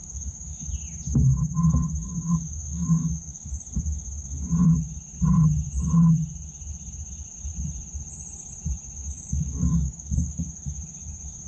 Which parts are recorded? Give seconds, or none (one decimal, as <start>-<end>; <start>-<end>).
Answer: 0.7-2.0; 3.6-9.0; 10.4-11.5

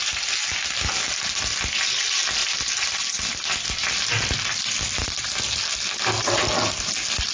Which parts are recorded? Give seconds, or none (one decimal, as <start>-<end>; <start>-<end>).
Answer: 0.0-7.3

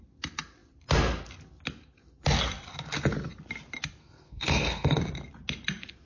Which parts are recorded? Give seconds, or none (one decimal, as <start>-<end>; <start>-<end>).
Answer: 0.0-4.0; 5.0-6.1